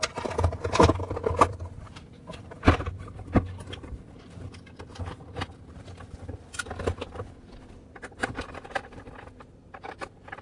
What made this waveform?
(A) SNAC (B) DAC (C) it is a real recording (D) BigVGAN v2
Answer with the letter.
D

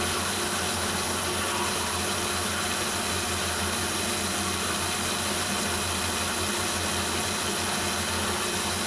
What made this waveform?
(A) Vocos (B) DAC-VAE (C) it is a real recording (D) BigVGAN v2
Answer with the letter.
C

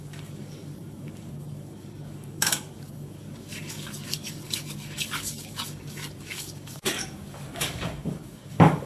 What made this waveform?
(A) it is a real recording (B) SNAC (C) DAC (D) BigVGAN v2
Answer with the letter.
C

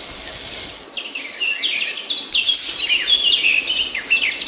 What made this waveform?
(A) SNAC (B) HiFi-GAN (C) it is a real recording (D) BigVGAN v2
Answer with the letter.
C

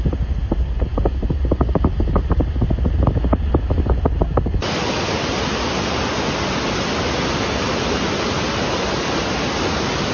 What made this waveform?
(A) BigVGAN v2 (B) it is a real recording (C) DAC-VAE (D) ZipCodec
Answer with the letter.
B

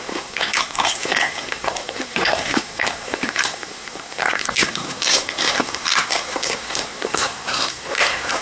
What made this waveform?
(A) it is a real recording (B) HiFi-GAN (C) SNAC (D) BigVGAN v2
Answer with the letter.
C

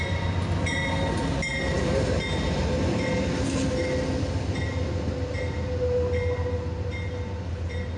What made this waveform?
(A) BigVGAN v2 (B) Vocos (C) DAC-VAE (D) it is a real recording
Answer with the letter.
D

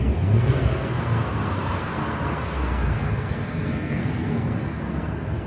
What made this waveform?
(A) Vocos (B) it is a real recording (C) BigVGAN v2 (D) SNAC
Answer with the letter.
D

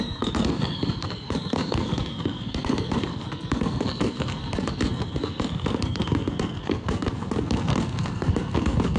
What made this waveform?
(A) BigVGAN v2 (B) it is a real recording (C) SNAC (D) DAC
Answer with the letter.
C